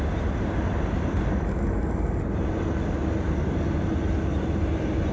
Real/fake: real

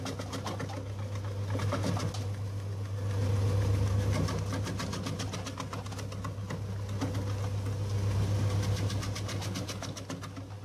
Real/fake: real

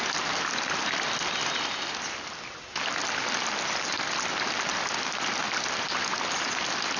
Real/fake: real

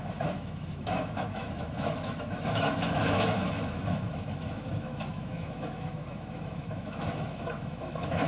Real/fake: fake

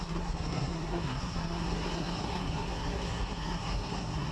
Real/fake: fake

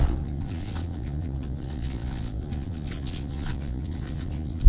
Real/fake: fake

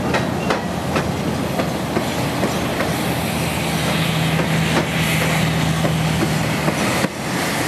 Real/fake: real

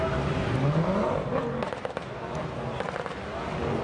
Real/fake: real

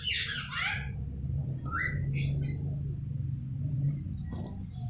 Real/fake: real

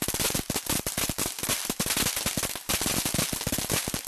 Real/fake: real